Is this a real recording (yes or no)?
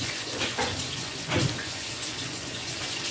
no